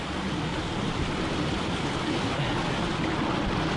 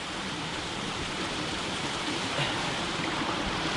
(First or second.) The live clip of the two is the first